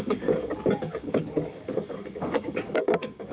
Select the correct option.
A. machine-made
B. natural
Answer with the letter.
A